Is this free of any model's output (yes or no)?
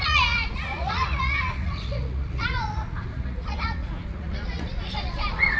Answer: no